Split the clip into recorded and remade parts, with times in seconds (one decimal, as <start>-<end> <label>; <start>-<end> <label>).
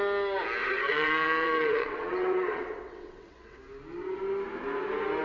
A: 0.0-0.6 recorded; 0.6-3.6 remade; 3.6-5.2 recorded